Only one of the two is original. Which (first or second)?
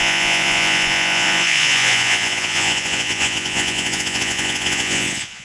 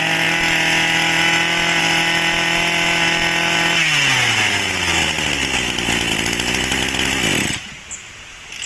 second